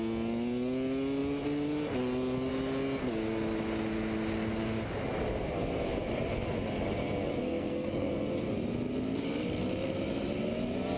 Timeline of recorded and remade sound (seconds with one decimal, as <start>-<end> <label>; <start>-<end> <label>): 0.0-7.4 recorded; 7.4-8.1 remade; 8.1-11.0 recorded